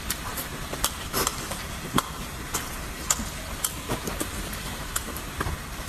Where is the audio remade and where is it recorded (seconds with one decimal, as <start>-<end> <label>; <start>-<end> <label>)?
0.0-1.3 recorded; 1.3-2.7 remade; 2.7-4.7 recorded; 4.7-5.5 remade; 5.5-5.9 recorded